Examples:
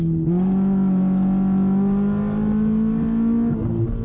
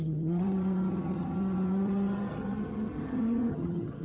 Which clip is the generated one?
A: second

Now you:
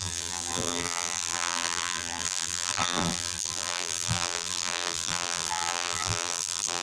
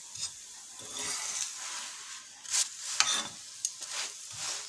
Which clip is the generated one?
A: first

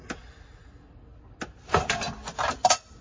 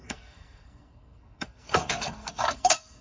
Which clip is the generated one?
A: second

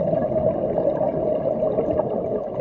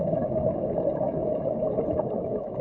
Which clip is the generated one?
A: second